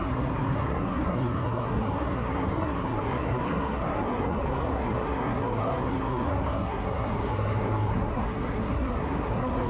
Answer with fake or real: fake